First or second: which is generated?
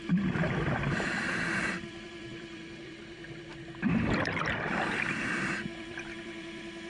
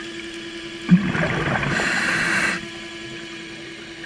first